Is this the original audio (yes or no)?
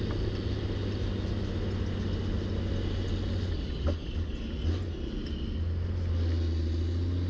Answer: yes